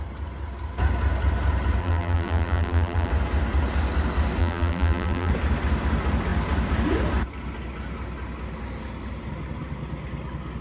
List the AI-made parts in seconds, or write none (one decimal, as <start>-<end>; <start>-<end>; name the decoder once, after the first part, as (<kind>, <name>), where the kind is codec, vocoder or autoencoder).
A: 1.8-3.1 (vocoder, BigVGAN v2); 4.4-5.3